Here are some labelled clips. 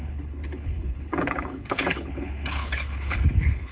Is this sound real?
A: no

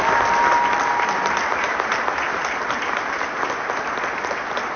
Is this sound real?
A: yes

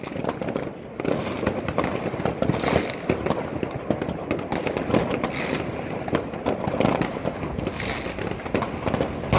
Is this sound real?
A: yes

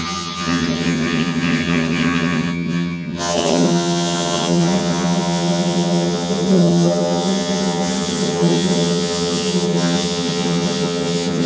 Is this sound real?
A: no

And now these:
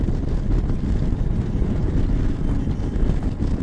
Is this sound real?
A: yes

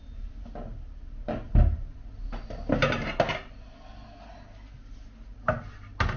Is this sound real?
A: yes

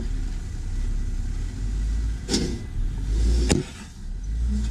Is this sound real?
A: yes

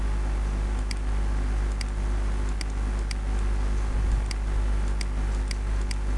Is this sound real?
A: yes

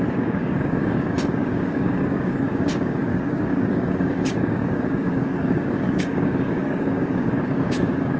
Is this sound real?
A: no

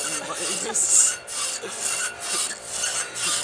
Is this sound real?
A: yes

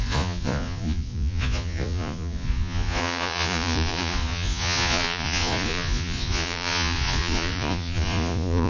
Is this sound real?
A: no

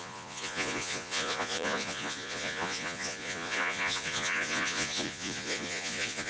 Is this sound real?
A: no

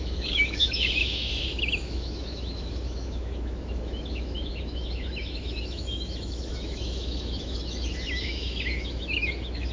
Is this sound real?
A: no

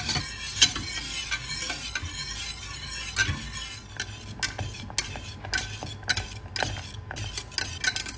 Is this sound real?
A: yes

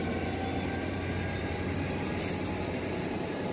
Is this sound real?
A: yes